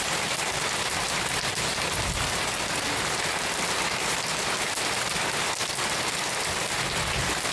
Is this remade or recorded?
recorded